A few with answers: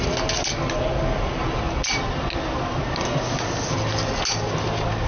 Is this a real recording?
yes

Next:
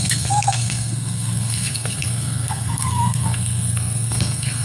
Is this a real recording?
no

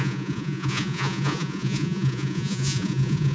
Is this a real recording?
no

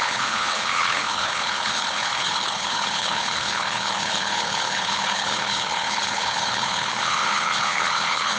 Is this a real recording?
no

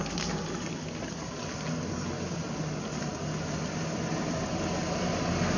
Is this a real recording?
yes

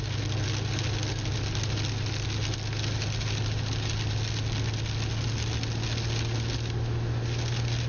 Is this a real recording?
yes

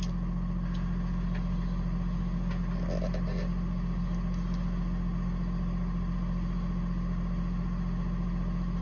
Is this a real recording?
yes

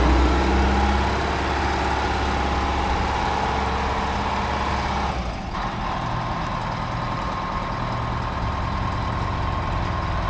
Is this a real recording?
yes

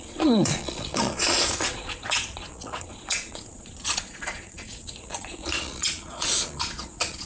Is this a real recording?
no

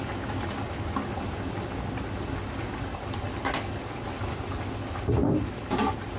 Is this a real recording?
yes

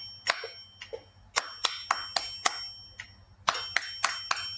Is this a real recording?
yes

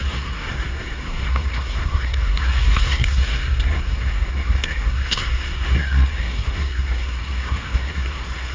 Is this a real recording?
no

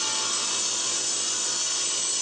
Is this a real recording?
yes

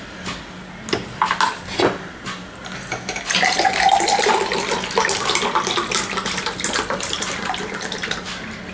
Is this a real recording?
yes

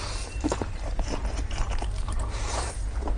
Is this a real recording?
no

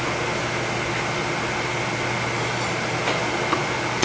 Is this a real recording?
yes